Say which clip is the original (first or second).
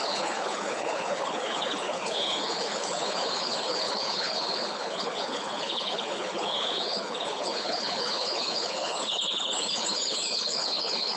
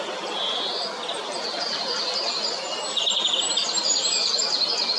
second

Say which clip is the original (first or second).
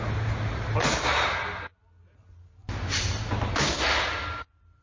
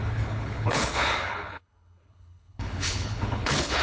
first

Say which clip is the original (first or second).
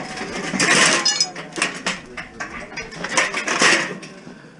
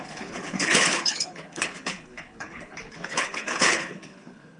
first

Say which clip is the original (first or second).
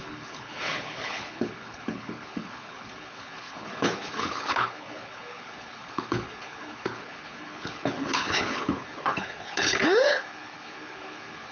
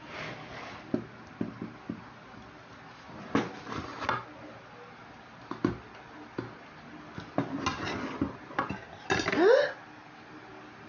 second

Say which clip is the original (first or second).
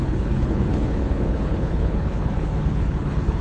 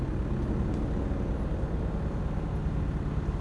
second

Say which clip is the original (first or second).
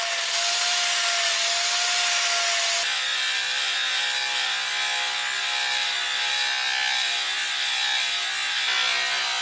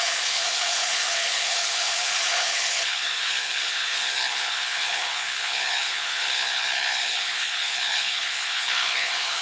first